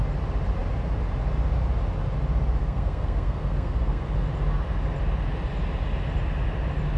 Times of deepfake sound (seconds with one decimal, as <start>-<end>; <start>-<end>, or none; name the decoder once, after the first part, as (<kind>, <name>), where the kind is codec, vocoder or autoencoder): 2.6-4.0 (codec, SNAC)